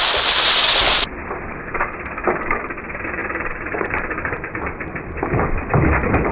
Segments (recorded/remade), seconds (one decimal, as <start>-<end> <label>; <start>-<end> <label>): 0.0-6.3 recorded